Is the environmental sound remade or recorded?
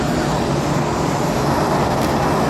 recorded